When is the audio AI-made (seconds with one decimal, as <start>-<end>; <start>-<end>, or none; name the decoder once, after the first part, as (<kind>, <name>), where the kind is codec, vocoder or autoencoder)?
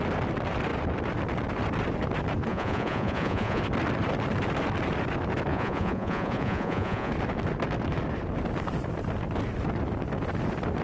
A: 2.5-3.6 (vocoder, Vocos); 5.5-7.1